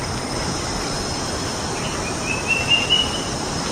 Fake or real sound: real